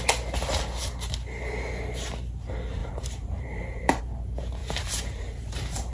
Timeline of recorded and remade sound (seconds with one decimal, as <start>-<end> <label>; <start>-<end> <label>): 0.0-2.8 recorded; 2.8-4.0 remade; 4.0-4.6 recorded; 4.6-5.9 remade